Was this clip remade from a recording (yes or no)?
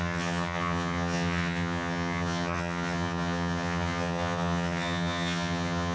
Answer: yes